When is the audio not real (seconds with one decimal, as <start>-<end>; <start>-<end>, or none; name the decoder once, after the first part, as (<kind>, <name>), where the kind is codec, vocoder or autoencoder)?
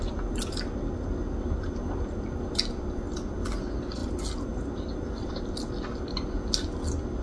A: none